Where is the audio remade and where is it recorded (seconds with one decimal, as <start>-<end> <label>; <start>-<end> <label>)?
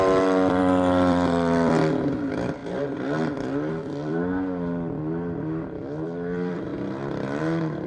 0.0-6.7 remade; 6.7-7.4 recorded; 7.4-7.9 remade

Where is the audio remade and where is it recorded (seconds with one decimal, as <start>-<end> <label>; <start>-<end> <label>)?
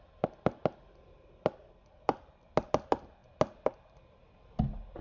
0.0-5.0 recorded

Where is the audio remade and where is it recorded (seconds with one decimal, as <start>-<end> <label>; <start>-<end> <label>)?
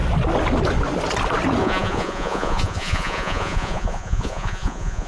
0.0-1.6 recorded; 1.6-5.1 remade